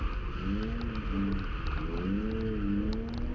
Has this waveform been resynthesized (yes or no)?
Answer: no